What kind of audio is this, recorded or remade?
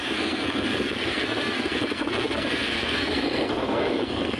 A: remade